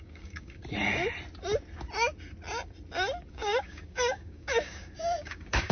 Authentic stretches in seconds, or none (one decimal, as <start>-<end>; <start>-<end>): 0.6-3.3